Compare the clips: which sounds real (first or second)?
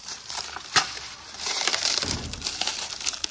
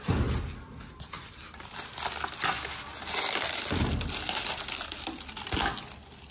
second